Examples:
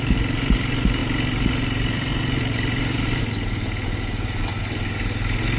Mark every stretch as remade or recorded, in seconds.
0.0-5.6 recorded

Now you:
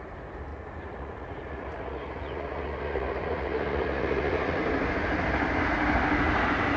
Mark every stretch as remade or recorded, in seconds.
0.0-0.5 recorded; 0.5-4.6 remade; 4.6-6.8 recorded

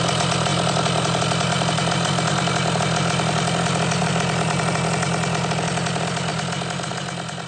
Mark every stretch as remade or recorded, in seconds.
0.0-7.5 recorded

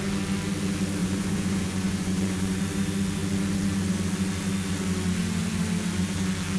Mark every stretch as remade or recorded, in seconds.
0.0-1.0 recorded; 1.0-2.6 remade; 2.6-6.6 recorded